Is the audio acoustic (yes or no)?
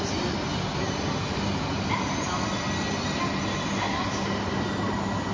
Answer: yes